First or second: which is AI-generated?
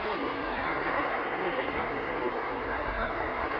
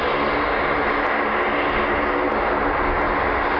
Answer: first